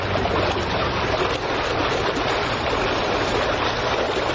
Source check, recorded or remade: recorded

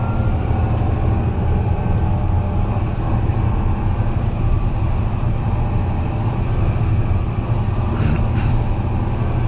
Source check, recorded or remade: recorded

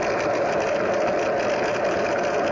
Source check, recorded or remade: recorded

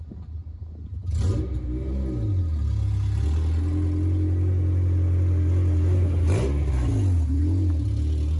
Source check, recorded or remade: recorded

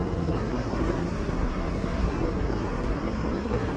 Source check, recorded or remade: remade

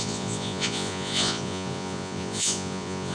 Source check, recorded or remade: remade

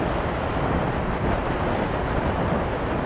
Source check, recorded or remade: recorded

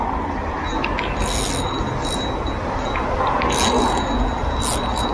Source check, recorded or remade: recorded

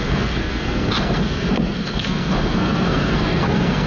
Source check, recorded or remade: remade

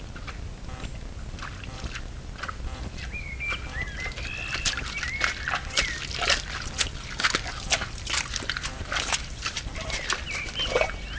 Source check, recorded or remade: recorded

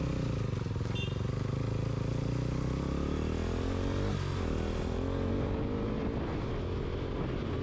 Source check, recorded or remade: recorded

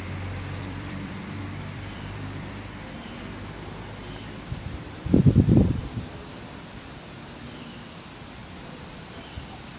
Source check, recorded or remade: remade